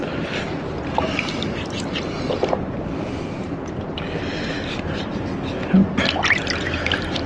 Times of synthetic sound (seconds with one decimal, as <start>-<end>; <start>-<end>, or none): none